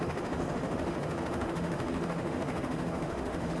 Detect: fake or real fake